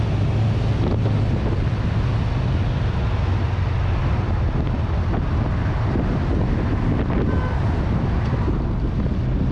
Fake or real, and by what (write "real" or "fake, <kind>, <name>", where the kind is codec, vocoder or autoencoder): real